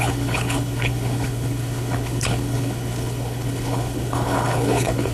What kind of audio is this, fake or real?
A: fake